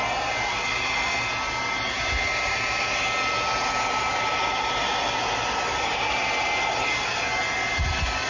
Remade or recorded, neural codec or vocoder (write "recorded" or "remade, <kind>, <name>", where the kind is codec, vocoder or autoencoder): recorded